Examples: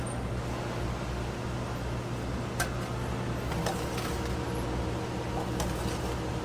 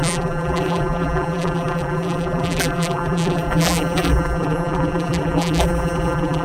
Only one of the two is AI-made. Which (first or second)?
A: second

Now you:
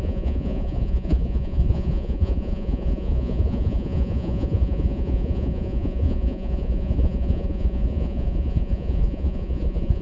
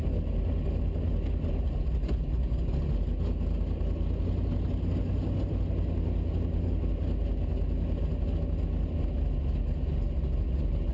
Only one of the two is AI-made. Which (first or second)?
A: first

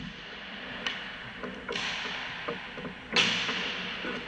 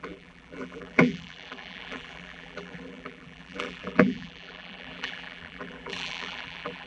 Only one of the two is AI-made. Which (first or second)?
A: second